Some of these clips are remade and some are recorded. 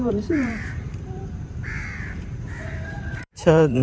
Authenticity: remade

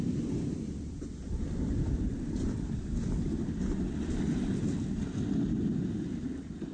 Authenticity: remade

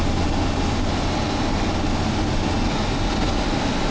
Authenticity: recorded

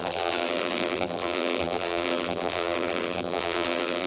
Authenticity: remade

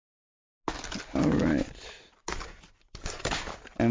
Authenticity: recorded